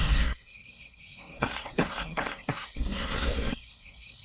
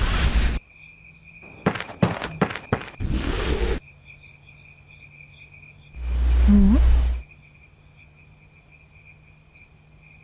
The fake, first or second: first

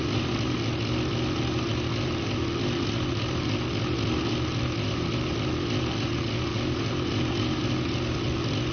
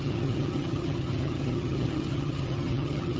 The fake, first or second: second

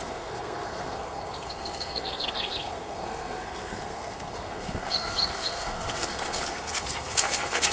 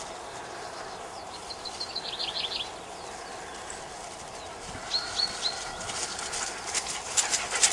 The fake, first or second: first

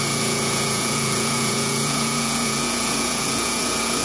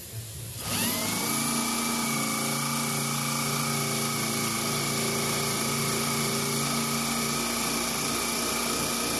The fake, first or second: first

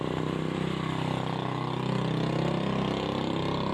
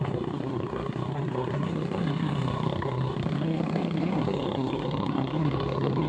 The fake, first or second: second